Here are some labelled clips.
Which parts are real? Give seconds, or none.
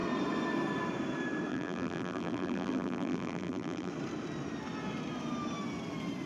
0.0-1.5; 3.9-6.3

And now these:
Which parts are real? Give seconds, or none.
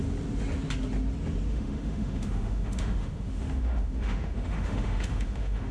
0.0-1.5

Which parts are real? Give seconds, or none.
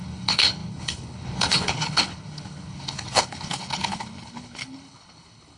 none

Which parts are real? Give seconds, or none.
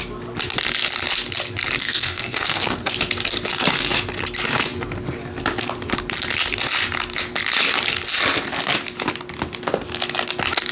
0.0-1.8; 2.9-10.7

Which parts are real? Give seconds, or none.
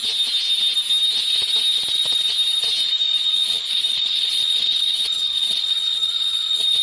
0.0-2.8